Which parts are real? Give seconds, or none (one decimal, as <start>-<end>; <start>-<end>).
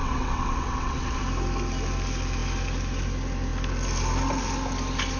1.2-5.2